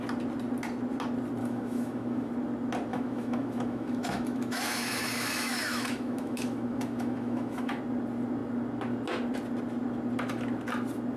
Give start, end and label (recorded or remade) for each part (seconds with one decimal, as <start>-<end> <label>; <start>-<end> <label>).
0.0-1.4 recorded; 1.4-2.3 remade; 2.3-2.9 recorded; 2.9-7.8 remade; 7.8-11.2 recorded